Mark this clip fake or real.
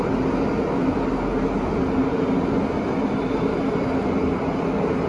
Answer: real